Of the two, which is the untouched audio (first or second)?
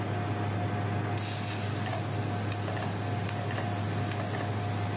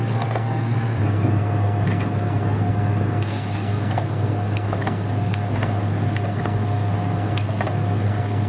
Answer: first